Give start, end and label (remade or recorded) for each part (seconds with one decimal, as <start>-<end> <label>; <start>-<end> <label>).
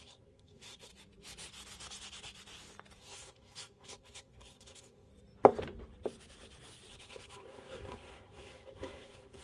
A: 0.0-0.9 remade; 0.9-3.0 recorded; 3.0-5.1 remade; 5.1-6.9 recorded; 6.9-9.4 remade